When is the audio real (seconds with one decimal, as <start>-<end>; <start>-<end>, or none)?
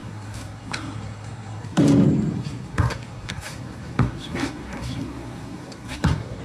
1.8-2.3